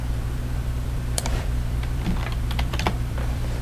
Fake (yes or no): yes